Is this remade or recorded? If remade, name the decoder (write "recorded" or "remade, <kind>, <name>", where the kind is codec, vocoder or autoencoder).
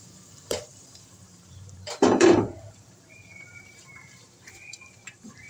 remade, vocoder, BigVGAN v2